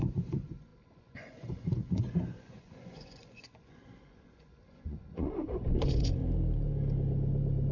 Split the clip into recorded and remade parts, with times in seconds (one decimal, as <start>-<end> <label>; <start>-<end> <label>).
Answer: 0.0-6.2 remade; 6.2-7.7 recorded